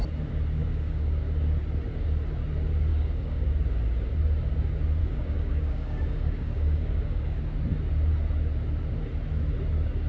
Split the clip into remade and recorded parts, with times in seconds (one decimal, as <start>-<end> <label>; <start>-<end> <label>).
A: 0.0-0.6 recorded; 0.6-1.2 remade; 1.2-2.9 recorded; 2.9-3.5 remade; 3.5-5.0 recorded; 5.0-7.4 remade; 7.4-10.1 recorded